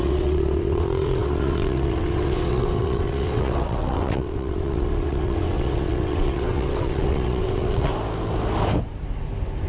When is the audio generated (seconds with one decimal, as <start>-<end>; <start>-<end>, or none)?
0.0-7.9